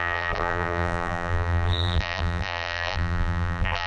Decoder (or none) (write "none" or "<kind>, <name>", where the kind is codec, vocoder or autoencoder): vocoder, BigVGAN v2